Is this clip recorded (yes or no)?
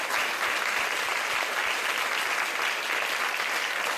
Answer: yes